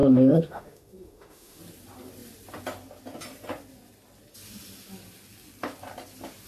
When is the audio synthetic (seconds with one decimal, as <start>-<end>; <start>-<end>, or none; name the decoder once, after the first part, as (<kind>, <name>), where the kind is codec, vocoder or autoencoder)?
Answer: 0.0-1.6 (autoencoder, DAC-VAE)